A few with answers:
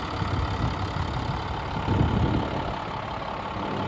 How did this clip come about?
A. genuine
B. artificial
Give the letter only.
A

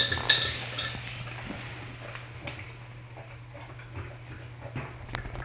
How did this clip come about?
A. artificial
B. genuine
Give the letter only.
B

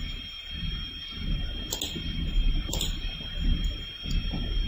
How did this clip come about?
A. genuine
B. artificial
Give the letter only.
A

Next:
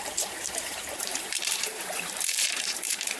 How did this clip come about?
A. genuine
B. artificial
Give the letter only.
B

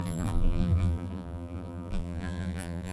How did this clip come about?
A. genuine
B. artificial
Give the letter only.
B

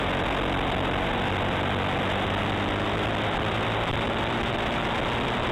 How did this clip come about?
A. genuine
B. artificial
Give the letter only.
A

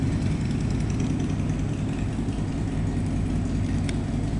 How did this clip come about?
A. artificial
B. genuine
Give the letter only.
B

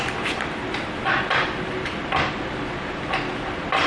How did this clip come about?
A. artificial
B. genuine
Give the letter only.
A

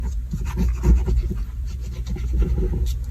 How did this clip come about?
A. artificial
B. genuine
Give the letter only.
B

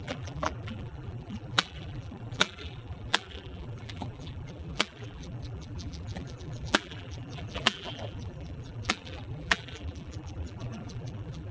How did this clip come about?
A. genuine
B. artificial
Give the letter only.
B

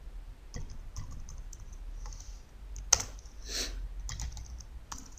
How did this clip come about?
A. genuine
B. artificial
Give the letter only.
A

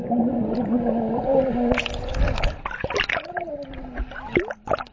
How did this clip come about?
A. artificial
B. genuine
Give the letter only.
B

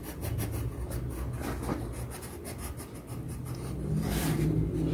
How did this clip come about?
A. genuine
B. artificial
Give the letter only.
A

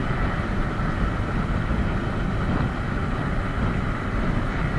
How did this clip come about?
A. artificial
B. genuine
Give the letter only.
B